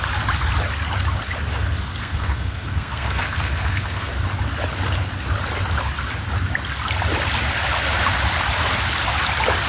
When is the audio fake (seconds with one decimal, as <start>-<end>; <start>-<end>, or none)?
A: 2.0-4.1